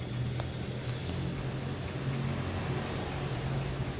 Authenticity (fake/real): real